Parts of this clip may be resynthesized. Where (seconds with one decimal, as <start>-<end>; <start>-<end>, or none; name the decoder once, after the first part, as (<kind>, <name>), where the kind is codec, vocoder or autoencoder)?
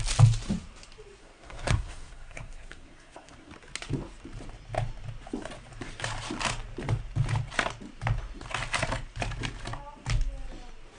1.2-3.5 (codec, SNAC)